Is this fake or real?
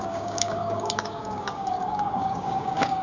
fake